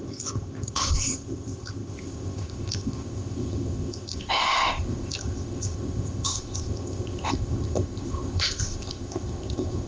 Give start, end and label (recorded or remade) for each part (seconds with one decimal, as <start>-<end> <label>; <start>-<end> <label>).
0.0-9.9 remade

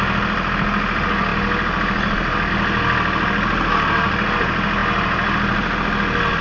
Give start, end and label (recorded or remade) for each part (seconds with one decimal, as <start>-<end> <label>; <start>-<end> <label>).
0.0-6.4 recorded

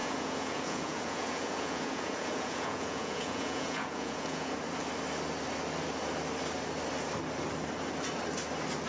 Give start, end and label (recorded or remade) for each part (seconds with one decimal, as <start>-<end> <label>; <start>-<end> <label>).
0.0-4.5 remade; 4.5-8.9 recorded

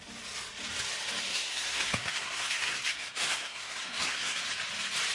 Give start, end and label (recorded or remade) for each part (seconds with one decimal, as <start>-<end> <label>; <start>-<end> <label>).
0.0-1.3 recorded; 1.3-4.4 remade; 4.4-5.1 recorded